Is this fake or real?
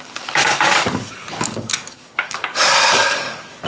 fake